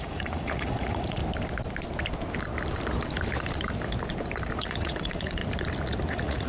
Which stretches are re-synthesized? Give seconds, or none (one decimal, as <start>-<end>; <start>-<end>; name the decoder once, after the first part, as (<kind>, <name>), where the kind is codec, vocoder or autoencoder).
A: 0.0-1.2 (vocoder, Vocos); 4.6-5.4; 6.1-6.5

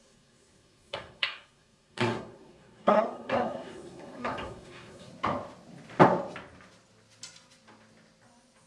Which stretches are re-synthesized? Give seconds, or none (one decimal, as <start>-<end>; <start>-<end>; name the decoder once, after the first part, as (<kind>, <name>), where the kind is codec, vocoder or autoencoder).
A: 0.0-5.1 (codec, SNAC)

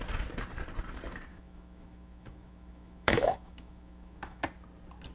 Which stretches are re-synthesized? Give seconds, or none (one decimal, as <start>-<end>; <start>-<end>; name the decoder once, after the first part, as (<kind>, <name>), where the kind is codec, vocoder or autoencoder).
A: 1.3-4.4 (autoencoder, DAC-VAE)

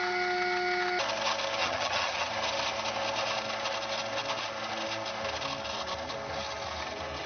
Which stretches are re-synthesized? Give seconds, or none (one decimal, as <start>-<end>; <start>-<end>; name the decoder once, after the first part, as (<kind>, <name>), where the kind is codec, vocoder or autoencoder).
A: 1.6-2.3 (vocoder, HiFi-GAN)

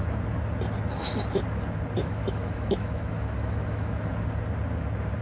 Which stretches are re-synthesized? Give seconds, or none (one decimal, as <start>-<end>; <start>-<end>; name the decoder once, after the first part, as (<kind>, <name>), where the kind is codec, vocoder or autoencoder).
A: 2.0-4.1 (autoencoder, DAC-VAE)

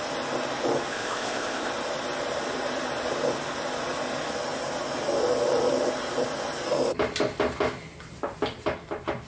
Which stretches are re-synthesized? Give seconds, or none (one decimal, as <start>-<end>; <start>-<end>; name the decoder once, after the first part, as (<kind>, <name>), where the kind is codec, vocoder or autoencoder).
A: 0.9-1.7 (codec, ZipCodec)

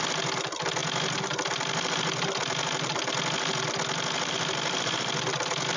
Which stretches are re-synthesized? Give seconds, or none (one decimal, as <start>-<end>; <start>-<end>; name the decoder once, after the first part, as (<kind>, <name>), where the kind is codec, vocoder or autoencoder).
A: none